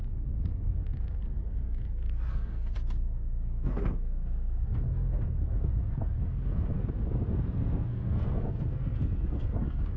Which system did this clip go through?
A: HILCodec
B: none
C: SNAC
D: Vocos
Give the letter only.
C